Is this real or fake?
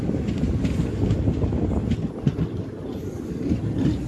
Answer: real